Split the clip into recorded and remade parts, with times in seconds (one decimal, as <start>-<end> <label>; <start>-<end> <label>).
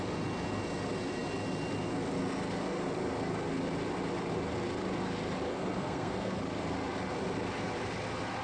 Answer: 0.0-5.5 recorded; 5.5-6.4 remade; 6.4-8.4 recorded